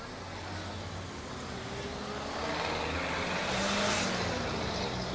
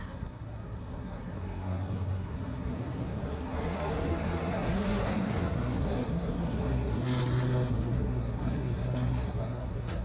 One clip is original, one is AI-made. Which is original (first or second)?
first